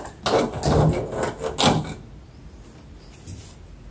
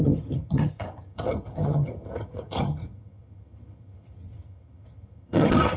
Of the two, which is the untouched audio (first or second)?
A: first